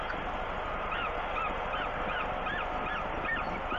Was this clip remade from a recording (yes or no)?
no